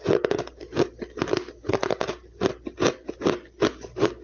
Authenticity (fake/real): real